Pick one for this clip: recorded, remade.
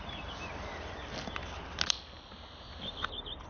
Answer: recorded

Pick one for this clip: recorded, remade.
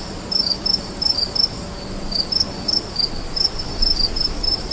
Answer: recorded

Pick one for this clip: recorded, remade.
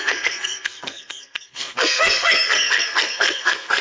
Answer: remade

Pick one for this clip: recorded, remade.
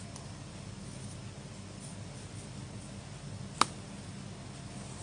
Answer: recorded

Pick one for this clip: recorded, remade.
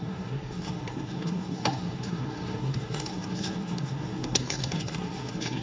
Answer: remade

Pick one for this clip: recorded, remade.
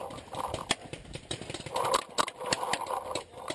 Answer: recorded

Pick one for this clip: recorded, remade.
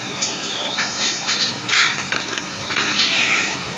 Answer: remade